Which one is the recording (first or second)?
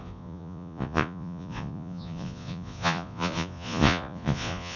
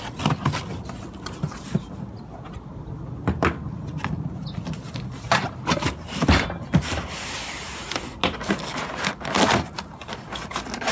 second